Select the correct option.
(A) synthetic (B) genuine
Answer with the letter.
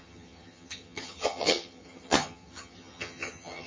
A